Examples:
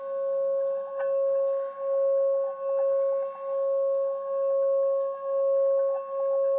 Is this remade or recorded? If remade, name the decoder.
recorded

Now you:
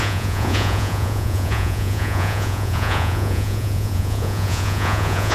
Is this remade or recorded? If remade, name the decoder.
remade, vocoder, Vocos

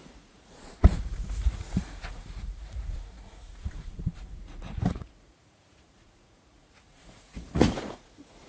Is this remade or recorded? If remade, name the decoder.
remade, vocoder, Vocos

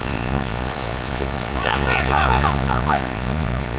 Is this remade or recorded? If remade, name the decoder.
remade, vocoder, Vocos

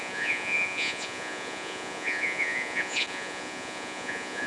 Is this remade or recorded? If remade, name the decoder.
remade, vocoder, Vocos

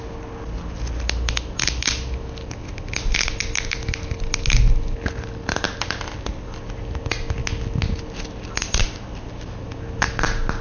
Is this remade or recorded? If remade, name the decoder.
recorded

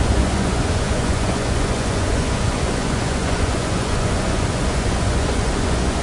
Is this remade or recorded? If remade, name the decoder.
remade, vocoder, Vocos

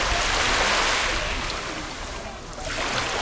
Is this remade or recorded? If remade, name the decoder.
recorded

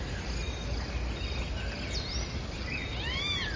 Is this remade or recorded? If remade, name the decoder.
recorded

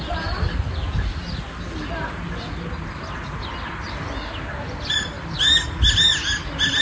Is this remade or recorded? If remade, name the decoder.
recorded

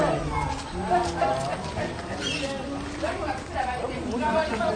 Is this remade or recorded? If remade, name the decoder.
recorded